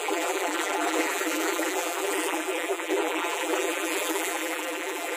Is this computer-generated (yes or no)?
yes